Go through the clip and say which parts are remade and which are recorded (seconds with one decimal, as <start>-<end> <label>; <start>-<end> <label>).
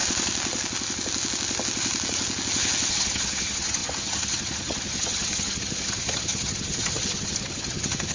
0.0-2.9 recorded; 2.9-8.1 remade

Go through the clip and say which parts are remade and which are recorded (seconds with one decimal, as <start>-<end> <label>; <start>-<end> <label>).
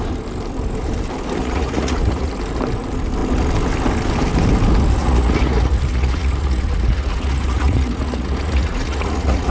0.0-1.4 recorded; 1.4-2.3 remade; 2.3-5.0 recorded; 5.0-9.5 remade